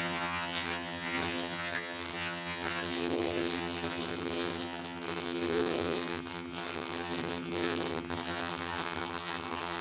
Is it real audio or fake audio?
fake